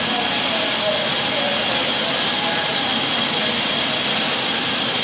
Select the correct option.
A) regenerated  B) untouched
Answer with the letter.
B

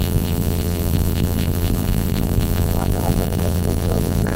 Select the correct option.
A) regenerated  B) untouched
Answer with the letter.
A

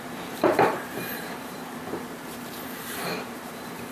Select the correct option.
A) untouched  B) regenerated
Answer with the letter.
B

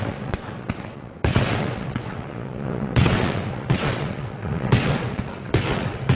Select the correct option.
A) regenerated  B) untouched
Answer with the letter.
A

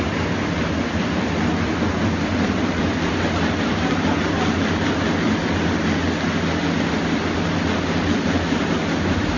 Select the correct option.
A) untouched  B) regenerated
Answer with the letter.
A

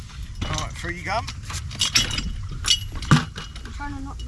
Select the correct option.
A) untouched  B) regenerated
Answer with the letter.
A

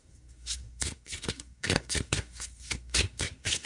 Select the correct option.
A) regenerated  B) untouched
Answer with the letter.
A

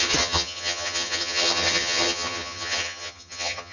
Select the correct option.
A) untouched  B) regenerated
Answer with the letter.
B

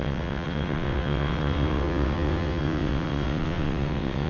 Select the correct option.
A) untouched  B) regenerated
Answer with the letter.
B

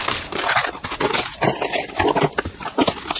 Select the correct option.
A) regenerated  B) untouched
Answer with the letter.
B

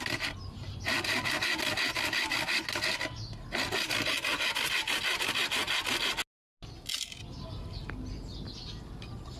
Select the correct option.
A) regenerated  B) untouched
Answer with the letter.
B